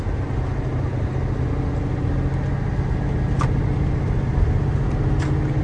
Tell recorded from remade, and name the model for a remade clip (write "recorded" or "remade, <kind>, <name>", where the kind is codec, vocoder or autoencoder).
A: recorded